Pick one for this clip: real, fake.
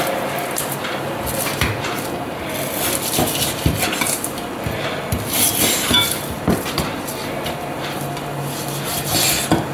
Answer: real